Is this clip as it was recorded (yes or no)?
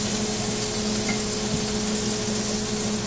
yes